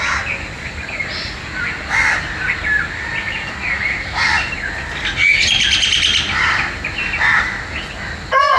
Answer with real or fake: real